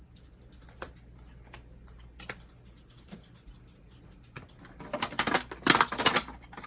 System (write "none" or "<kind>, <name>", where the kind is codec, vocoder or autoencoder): none